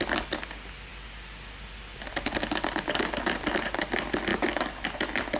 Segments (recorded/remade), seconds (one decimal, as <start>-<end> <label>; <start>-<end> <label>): 0.0-5.4 recorded